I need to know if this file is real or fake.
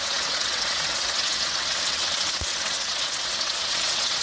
fake